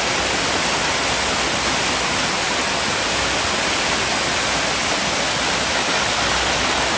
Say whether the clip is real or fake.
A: real